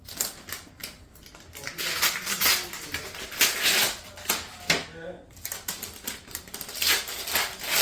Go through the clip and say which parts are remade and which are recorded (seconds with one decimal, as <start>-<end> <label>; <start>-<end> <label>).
0.0-7.8 recorded